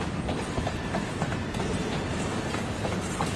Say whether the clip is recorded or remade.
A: recorded